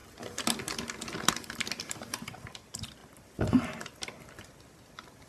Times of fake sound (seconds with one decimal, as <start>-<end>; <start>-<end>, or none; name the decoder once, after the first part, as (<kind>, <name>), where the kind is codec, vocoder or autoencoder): 1.3-5.3 (vocoder, BigVGAN v2)